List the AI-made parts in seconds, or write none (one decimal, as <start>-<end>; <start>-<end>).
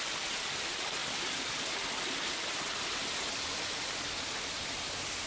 none